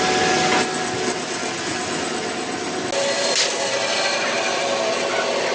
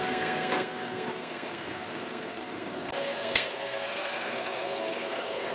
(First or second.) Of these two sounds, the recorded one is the first